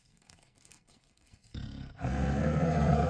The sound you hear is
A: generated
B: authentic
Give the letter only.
A